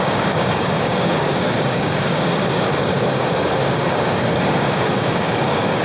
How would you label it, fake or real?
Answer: fake